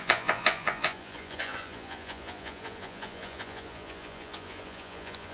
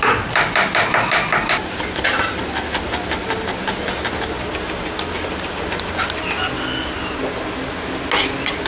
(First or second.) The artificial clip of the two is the first